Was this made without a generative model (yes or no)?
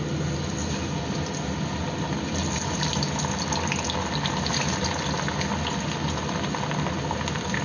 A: yes